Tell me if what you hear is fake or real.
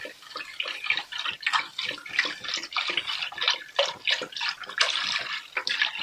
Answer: real